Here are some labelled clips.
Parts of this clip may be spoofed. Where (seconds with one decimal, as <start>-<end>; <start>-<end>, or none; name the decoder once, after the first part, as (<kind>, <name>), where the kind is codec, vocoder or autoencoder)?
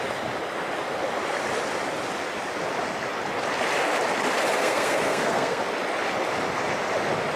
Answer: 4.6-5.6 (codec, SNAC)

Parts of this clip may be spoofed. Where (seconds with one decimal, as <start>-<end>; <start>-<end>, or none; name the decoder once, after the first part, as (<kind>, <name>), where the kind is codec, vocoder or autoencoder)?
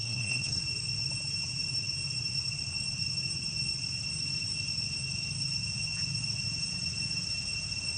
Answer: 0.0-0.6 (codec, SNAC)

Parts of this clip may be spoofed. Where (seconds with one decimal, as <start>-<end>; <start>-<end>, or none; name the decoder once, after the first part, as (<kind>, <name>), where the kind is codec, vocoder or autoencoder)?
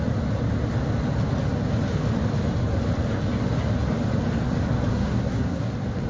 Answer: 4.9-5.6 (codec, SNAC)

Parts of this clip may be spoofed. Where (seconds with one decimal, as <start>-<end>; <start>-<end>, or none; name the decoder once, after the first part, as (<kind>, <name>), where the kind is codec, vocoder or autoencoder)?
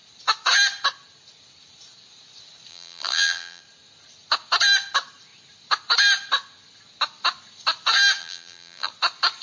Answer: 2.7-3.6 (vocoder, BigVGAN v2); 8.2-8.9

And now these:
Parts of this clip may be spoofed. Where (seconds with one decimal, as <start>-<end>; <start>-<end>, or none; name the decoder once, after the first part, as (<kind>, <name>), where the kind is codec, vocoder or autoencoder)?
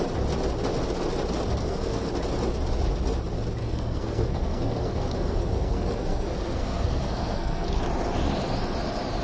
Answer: 1.6-2.1 (codec, SNAC); 3.6-7.8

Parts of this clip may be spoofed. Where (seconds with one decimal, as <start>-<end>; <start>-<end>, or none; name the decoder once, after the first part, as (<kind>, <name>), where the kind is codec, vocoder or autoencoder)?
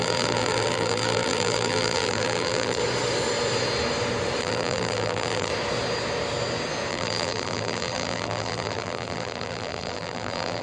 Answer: 0.0-2.8 (vocoder, BigVGAN v2); 4.4-5.5; 6.9-10.6